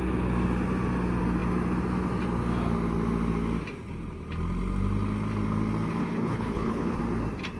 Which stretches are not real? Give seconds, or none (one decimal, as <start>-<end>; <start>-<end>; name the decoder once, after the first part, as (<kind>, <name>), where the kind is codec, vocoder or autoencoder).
6.0-7.0 (codec, HILCodec)